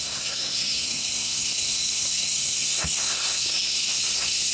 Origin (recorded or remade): remade